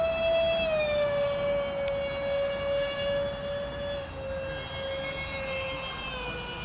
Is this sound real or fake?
real